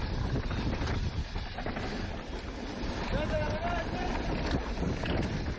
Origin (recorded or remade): recorded